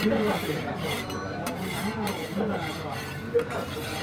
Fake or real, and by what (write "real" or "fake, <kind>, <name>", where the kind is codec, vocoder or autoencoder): fake, vocoder, BigVGAN v2